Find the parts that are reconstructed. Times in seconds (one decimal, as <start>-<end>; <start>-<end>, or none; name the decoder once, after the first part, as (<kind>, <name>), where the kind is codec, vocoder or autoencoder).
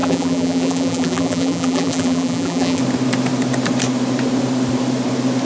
0.0-2.8 (vocoder, BigVGAN v2)